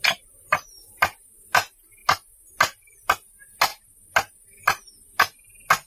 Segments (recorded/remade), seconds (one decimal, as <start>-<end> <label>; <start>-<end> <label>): 0.0-5.9 recorded